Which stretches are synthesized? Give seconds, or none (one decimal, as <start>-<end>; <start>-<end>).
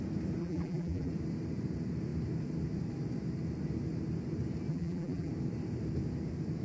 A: 0.4-1.1; 4.7-5.3